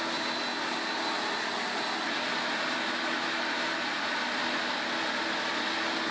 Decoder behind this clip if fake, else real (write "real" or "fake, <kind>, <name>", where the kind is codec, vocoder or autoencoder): real